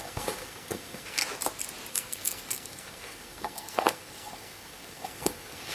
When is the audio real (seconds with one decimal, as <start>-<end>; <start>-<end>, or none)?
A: 1.2-1.9